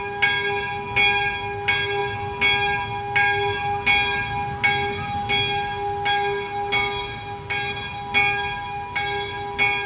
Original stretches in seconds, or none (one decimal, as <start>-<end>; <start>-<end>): 0.0-9.9